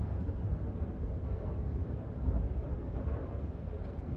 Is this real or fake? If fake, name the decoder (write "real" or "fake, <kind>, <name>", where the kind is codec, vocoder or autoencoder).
fake, codec, SNAC